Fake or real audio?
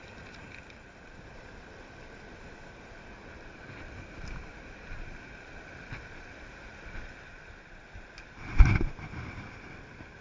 fake